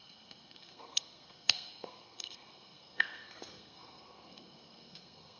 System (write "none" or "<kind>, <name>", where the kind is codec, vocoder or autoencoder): codec, SNAC